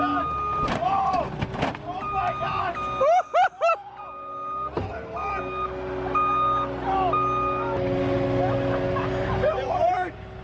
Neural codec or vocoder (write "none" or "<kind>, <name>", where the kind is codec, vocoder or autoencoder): none